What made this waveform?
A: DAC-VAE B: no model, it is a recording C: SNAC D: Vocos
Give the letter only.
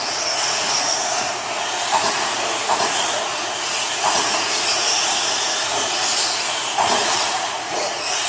D